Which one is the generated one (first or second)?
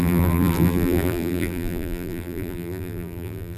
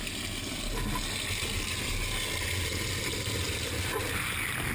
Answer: first